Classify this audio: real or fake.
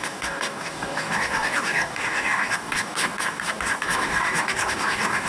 fake